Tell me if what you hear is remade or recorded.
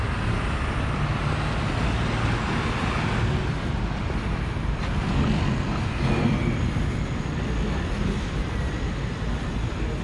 recorded